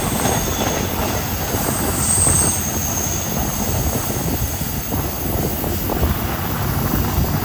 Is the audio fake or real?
real